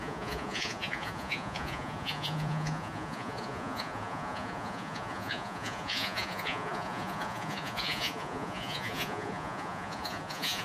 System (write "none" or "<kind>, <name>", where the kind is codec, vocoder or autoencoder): vocoder, Vocos